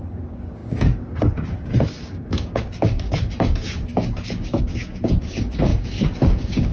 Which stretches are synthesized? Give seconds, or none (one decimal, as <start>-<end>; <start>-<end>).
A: 0.0-6.7